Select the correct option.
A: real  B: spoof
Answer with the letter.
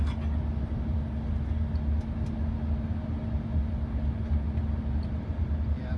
A